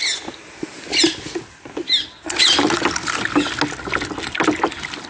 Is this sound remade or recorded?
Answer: recorded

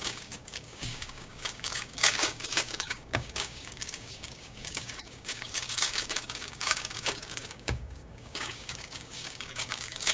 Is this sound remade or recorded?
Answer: remade